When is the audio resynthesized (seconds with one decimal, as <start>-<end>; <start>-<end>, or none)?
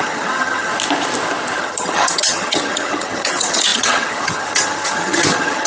0.0-0.7; 1.6-5.7